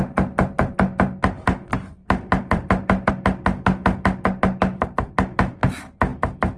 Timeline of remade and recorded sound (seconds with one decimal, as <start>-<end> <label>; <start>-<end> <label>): 0.0-2.0 recorded; 2.0-3.1 remade; 3.1-6.6 recorded